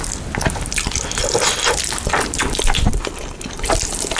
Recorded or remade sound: recorded